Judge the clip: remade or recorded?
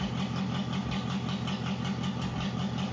recorded